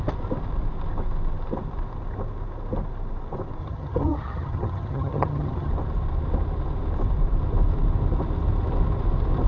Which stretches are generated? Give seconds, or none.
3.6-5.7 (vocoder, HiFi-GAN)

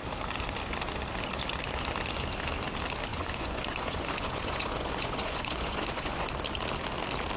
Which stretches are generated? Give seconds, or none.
3.1-6.3 (vocoder, Vocos)